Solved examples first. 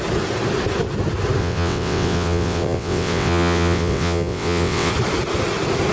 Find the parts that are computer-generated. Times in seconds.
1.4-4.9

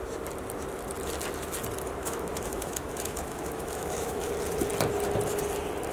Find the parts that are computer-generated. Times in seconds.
2.0-4.3